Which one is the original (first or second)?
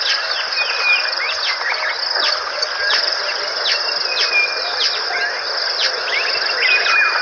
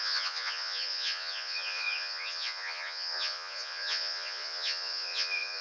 first